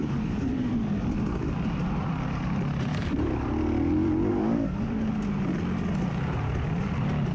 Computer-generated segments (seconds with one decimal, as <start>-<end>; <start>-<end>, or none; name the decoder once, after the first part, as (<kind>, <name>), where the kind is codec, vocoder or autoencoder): 0.0-0.7 (codec, DAC); 2.9-3.5; 4.3-5.1